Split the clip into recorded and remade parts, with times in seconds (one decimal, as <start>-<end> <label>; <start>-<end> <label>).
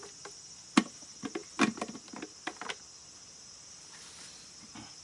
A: 0.0-5.0 recorded